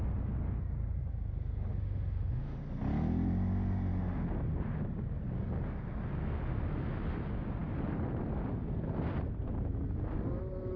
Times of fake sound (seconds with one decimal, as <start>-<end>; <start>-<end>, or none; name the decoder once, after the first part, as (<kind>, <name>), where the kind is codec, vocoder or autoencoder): 1.7-2.6 (autoencoder, DAC-VAE)